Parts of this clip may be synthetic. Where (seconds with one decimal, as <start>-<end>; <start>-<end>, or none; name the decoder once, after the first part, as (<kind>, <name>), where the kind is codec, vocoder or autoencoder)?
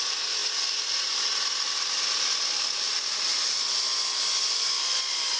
none